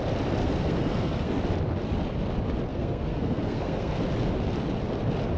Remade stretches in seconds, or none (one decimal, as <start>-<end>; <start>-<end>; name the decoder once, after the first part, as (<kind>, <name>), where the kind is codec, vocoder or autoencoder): 0.4-1.4 (codec, SNAC); 2.7-4.0